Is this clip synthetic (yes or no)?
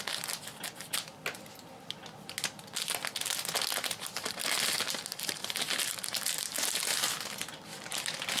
no